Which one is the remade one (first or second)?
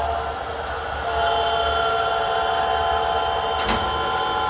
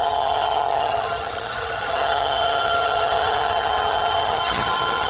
second